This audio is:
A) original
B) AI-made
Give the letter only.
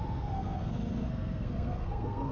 B